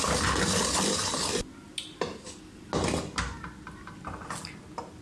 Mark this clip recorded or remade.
recorded